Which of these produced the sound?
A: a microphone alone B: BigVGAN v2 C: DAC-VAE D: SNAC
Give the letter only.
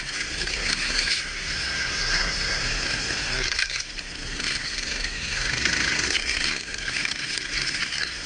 D